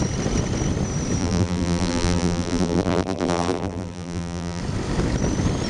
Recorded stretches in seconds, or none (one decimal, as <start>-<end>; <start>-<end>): 0.0-1.2; 4.6-5.7